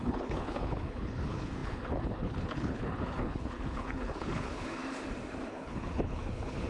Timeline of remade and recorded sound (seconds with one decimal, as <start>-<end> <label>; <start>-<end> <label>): 0.0-4.8 remade; 4.8-5.5 recorded; 5.5-6.7 remade